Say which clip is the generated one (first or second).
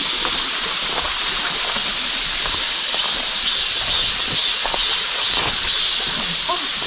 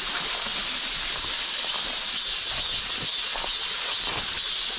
first